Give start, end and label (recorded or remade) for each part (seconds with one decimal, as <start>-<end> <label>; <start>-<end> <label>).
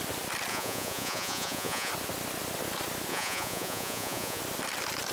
0.0-0.5 recorded; 0.5-1.9 remade; 1.9-3.1 recorded; 3.1-4.4 remade; 4.4-5.1 recorded